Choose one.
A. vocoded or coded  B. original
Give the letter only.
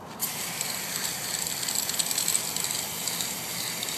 B